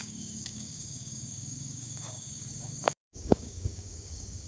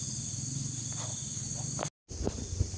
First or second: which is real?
second